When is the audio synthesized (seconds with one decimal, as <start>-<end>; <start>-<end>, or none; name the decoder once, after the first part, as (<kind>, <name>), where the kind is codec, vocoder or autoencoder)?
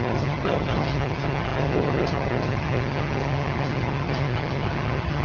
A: 0.0-5.2 (vocoder, HiFi-GAN)